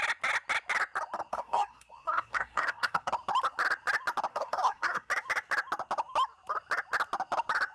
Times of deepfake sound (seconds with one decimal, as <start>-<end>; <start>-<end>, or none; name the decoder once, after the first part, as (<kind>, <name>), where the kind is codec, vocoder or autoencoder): 1.3-3.1 (codec, SNAC); 4.3-5.1

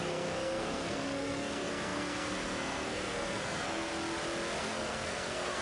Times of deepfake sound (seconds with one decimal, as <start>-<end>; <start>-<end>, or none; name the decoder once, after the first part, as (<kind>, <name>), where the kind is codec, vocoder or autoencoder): 0.0-3.9 (codec, SNAC); 4.6-5.6

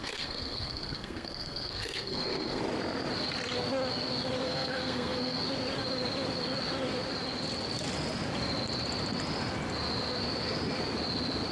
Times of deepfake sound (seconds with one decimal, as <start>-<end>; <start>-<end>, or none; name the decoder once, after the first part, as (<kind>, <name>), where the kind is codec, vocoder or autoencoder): 0.0-2.6 (codec, SNAC); 4.4-5.4